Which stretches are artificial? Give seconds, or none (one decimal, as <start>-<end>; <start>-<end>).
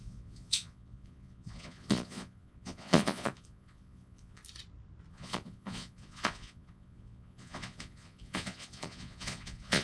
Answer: 0.0-4.4; 5.1-9.8